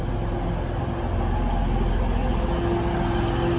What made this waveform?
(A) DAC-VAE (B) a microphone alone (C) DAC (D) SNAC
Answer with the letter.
B